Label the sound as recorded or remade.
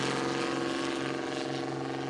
recorded